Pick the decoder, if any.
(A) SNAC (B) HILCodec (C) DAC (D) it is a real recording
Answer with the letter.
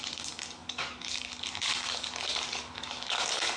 C